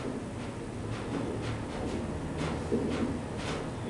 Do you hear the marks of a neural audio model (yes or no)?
no